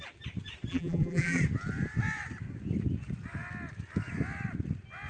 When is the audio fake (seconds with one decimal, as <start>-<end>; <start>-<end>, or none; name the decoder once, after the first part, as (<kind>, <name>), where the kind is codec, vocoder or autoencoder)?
0.7-1.4 (vocoder, BigVGAN v2)